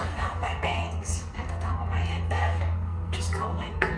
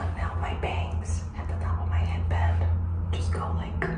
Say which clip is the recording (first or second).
second